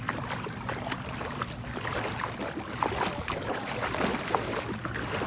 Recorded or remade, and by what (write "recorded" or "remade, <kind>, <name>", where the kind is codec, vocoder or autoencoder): recorded